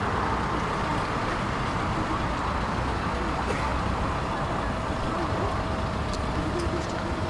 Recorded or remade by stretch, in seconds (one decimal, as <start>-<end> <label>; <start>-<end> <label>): 0.0-0.9 recorded; 0.9-1.8 remade; 1.8-3.7 recorded; 3.7-4.6 remade; 4.6-7.3 recorded